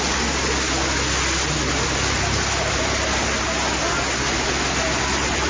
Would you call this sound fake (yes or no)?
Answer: no